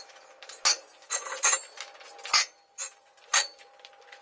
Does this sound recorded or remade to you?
recorded